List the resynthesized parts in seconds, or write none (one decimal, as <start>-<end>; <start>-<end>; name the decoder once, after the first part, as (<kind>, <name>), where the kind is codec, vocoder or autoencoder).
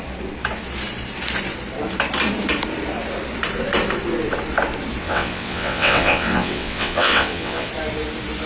5.0-7.7 (vocoder, WaveNeXt)